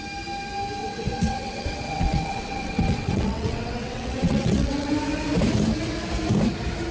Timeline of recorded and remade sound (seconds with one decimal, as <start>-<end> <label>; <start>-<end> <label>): 0.0-0.8 recorded; 0.8-4.9 remade; 4.9-6.9 recorded